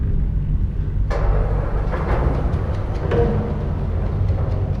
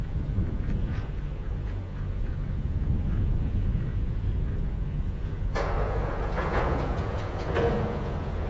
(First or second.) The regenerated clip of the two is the second